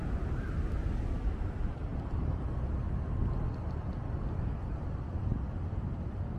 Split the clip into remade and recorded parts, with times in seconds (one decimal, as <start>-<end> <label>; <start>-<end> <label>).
0.0-6.4 recorded

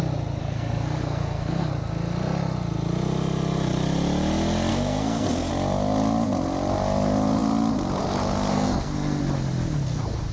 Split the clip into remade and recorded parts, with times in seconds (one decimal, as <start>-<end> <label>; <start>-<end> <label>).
0.0-0.4 recorded; 0.4-1.7 remade; 1.7-4.7 recorded; 4.7-5.5 remade; 5.5-8.5 recorded; 8.5-9.2 remade; 9.2-10.3 recorded

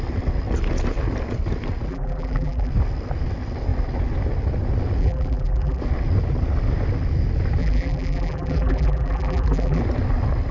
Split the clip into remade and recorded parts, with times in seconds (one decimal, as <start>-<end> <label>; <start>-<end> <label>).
0.0-1.9 recorded; 1.9-2.7 remade; 2.7-5.0 recorded; 5.0-5.8 remade; 5.8-7.6 recorded; 7.6-9.8 remade; 9.8-10.5 recorded

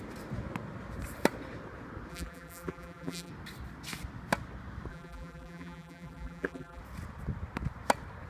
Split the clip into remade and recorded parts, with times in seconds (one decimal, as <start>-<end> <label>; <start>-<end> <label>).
0.0-2.1 recorded; 2.1-3.3 remade; 3.3-4.9 recorded; 4.9-6.8 remade; 6.8-8.3 recorded

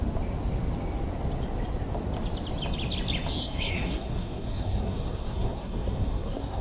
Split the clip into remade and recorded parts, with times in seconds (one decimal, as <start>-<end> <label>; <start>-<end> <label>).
0.0-3.4 recorded; 3.4-6.6 remade

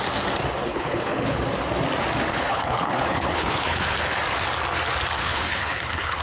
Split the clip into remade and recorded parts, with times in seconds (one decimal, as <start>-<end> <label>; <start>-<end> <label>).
0.0-0.6 recorded; 0.6-1.4 remade; 1.4-2.3 recorded; 2.3-4.0 remade; 4.0-5.2 recorded; 5.2-6.2 remade